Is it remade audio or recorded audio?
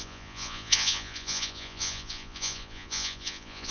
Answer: remade